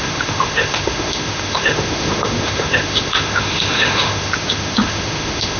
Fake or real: fake